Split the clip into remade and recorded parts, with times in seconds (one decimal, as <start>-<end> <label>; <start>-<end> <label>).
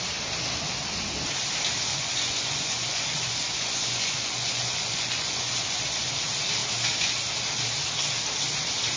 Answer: 0.0-1.9 recorded; 1.9-6.1 remade; 6.1-9.0 recorded